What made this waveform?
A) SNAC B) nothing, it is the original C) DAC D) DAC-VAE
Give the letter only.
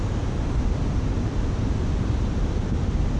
B